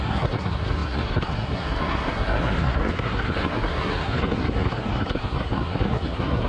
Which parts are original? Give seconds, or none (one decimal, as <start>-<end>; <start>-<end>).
none